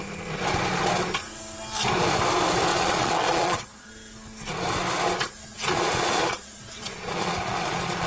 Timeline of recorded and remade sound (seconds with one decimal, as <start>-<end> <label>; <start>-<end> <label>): 0.0-2.7 recorded; 2.7-3.9 remade; 3.9-5.5 recorded; 5.5-8.1 remade